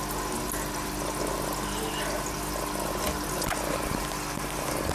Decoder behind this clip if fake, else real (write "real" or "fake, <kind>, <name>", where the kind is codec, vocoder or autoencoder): real